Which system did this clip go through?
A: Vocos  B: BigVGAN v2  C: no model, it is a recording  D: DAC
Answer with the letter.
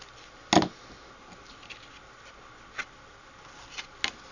C